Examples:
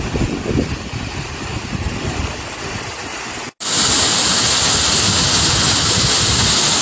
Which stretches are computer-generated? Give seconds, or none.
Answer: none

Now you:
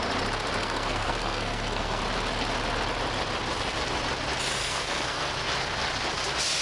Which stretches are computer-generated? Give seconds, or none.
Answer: 0.6-2.0 (codec, SNAC); 4.6-5.3

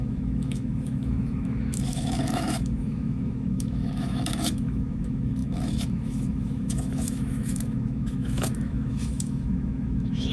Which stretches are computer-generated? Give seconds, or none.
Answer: 0.0-10.3 (autoencoder, DAC-VAE)